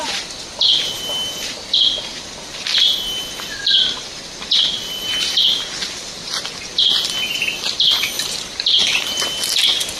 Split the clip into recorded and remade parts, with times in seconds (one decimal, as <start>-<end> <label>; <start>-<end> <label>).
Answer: 0.0-10.0 recorded